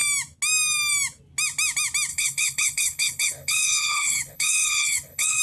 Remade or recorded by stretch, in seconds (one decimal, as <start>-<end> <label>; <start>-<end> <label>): 0.0-2.1 recorded; 2.1-5.4 remade

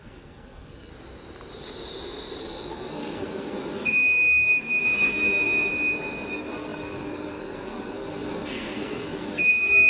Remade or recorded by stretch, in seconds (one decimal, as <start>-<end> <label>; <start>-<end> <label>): 0.0-0.9 remade; 0.9-2.4 recorded; 2.4-5.7 remade; 5.7-6.3 recorded; 6.3-9.9 remade

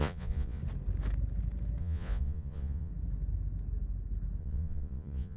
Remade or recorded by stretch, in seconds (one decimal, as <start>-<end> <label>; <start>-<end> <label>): 0.0-0.6 remade; 0.6-1.8 recorded; 1.8-2.9 remade; 2.9-4.4 recorded; 4.4-5.4 remade

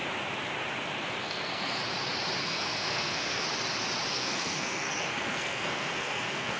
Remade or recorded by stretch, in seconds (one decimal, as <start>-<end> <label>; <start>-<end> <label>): 0.0-1.2 recorded; 1.2-1.8 remade; 1.8-2.4 recorded; 2.4-3.4 remade; 3.4-4.1 recorded; 4.1-6.6 remade

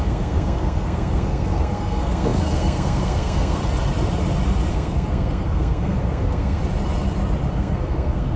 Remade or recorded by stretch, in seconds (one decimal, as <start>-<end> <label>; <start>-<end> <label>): 0.0-3.6 remade; 3.6-4.7 recorded; 4.7-6.6 remade; 6.6-7.5 recorded; 7.5-8.4 remade

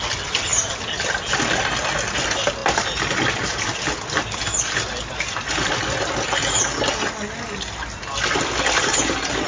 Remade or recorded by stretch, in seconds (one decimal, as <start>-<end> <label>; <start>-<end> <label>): 0.0-9.5 recorded

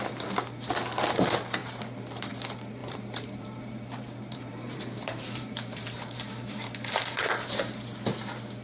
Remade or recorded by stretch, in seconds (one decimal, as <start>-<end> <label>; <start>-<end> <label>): 0.0-2.8 recorded; 2.8-7.0 remade; 7.0-8.6 recorded

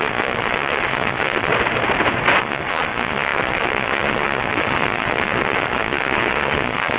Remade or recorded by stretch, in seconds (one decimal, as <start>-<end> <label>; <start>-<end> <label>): 0.0-1.5 remade; 1.5-2.4 recorded; 2.4-7.0 remade